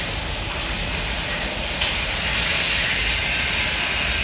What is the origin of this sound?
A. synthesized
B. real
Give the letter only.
B